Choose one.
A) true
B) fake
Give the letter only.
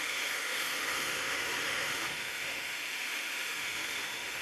B